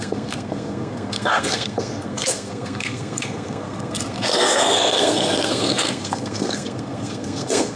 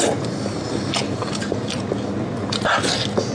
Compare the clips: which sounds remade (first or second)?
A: first